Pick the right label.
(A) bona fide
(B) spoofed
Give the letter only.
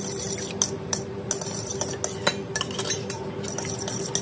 A